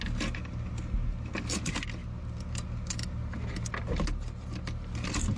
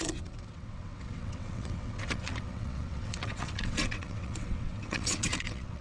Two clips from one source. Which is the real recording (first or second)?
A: first